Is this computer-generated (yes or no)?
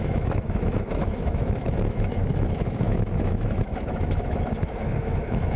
yes